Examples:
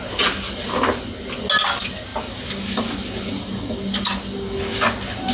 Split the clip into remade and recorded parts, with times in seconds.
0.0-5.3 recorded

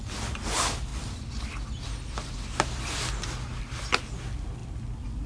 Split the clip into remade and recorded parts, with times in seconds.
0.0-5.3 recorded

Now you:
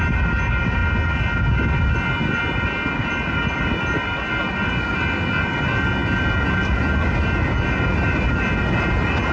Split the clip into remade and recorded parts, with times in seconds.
0.0-9.3 recorded

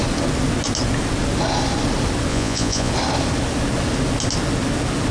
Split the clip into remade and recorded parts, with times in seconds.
0.0-2.3 recorded; 2.3-2.9 remade; 2.9-5.1 recorded

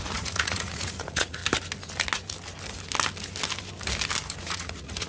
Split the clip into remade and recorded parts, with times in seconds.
0.0-1.4 remade; 1.4-4.4 recorded; 4.4-5.1 remade

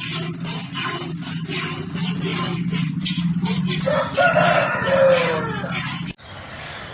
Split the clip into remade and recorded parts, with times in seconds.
0.0-6.9 recorded